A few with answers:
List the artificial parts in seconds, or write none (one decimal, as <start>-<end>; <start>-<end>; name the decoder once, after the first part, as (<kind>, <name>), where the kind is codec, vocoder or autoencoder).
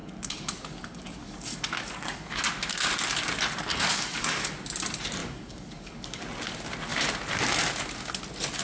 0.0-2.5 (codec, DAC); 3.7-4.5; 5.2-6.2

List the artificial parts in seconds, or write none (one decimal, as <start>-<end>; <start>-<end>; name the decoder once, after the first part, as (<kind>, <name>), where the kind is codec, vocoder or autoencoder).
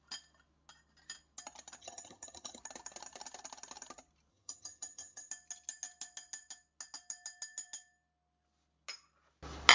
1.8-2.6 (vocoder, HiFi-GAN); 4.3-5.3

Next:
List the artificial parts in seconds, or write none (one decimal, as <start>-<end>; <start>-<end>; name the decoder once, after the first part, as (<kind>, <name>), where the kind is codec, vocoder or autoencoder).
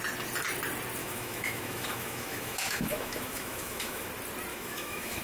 1.0-4.1 (autoencoder, DAC-VAE); 4.5-5.2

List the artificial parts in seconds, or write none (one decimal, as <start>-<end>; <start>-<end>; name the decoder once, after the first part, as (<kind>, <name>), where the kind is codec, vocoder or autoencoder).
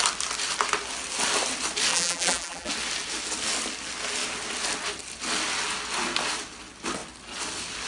1.9-2.7 (vocoder, BigVGAN v2)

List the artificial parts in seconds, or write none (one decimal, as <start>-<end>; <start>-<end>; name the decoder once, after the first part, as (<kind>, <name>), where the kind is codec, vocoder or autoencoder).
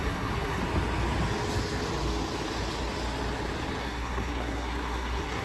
0.0-0.6 (codec, SNAC); 3.8-5.4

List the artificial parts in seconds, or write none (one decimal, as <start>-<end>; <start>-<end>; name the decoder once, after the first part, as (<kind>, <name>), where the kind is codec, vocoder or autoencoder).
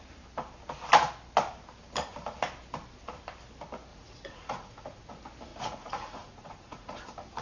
3.9-5.1 (vocoder, Vocos); 5.5-7.0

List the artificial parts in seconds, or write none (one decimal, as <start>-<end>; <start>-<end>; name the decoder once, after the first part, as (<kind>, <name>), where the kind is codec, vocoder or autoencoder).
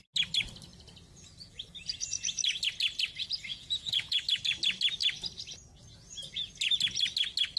3.5-4.2 (vocoder, Vocos)